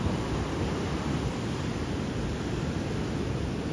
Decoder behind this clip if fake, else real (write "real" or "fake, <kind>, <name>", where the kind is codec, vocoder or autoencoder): fake, vocoder, BigVGAN v2